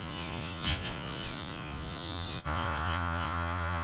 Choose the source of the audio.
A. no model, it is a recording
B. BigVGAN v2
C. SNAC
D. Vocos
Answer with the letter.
D